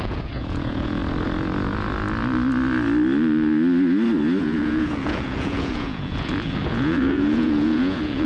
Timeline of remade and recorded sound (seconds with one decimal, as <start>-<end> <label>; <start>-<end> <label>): 0.0-1.0 remade; 1.0-4.4 recorded; 4.4-8.3 remade